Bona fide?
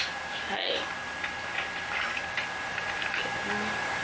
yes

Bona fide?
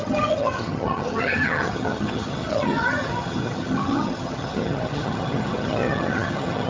no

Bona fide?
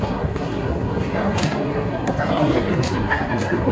no